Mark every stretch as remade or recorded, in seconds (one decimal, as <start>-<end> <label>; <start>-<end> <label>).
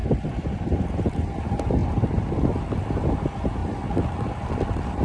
0.0-1.4 recorded; 1.4-3.6 remade; 3.6-4.5 recorded; 4.5-5.0 remade